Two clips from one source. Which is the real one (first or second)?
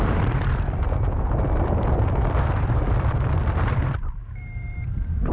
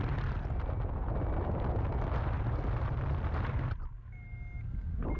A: second